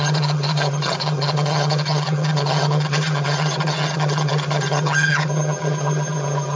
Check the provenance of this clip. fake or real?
fake